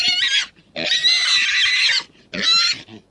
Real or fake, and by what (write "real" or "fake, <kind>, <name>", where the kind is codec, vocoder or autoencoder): real